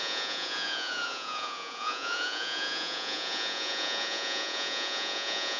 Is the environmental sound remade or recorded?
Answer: remade